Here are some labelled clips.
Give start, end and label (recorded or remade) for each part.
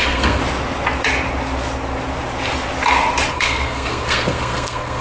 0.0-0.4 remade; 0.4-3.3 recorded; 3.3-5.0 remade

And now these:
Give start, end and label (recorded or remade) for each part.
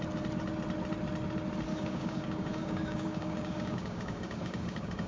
0.0-1.7 recorded; 1.7-5.1 remade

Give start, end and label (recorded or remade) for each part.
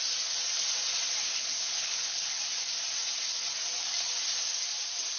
0.0-1.2 recorded; 1.2-2.4 remade; 2.4-5.2 recorded